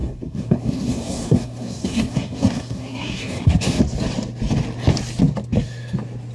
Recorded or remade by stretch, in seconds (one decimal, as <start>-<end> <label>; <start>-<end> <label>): 0.0-3.8 remade; 3.8-6.3 recorded